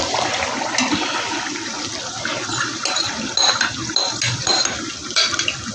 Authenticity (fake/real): real